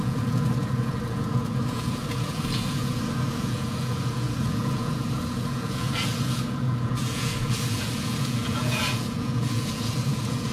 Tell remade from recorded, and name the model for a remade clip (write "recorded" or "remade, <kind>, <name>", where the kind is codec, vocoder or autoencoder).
remade, vocoder, Vocos